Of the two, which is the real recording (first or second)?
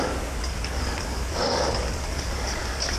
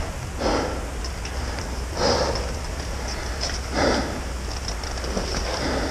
second